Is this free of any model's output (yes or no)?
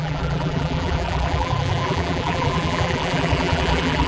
no